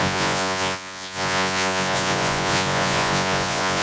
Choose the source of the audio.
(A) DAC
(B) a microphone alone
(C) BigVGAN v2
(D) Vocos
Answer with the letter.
D